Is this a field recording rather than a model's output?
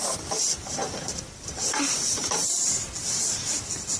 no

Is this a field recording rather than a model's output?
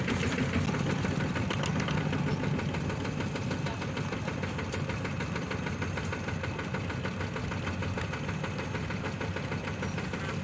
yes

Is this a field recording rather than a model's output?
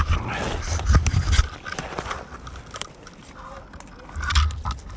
yes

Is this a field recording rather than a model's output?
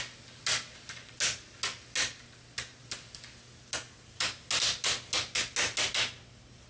yes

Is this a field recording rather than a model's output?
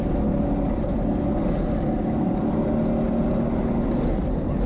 yes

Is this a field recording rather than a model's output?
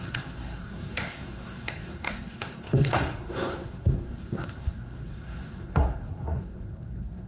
no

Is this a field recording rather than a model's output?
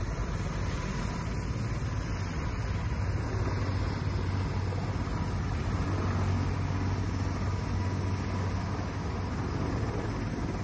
yes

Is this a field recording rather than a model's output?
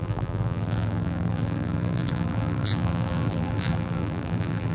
no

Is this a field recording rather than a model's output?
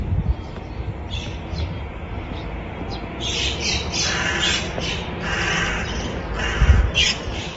yes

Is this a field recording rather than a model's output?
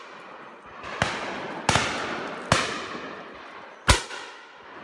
yes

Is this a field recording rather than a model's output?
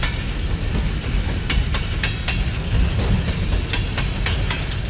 yes